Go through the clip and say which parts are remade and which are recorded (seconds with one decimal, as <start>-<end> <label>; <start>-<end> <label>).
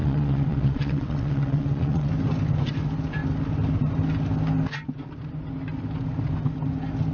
0.0-2.1 remade; 2.1-7.1 recorded